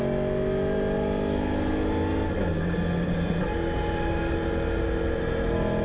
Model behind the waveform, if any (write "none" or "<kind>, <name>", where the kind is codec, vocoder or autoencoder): none